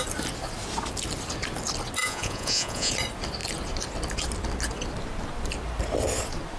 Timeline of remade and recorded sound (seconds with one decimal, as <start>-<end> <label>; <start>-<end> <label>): 0.0-2.0 recorded; 2.0-2.9 remade; 2.9-6.6 recorded